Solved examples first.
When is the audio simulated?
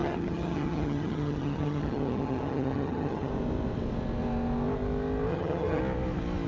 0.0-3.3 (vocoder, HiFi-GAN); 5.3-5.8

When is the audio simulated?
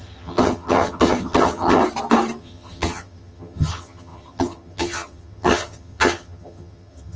0.0-1.8 (vocoder, HiFi-GAN); 2.4-7.2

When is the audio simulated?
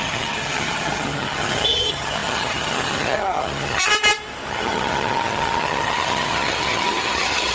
0.0-3.9 (vocoder, HiFi-GAN); 4.5-7.5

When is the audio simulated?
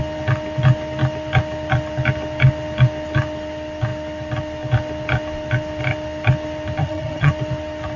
6.8-7.3 (vocoder, HiFi-GAN)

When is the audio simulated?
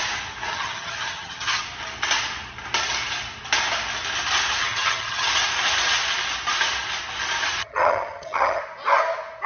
0.5-1.6 (vocoder, HiFi-GAN); 4.6-5.3; 7.6-8.6